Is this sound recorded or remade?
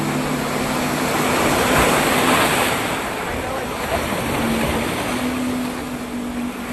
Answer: recorded